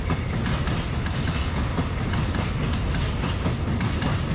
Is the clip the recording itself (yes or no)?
yes